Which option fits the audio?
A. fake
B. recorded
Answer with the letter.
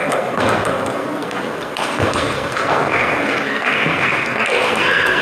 A